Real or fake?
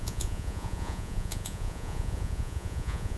fake